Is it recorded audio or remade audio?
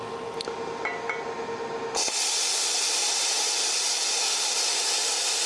recorded